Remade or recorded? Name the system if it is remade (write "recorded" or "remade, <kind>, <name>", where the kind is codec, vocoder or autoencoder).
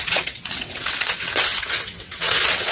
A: remade, vocoder, WaveNeXt